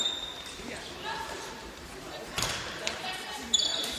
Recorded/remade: remade